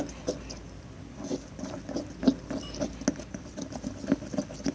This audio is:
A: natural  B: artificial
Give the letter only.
A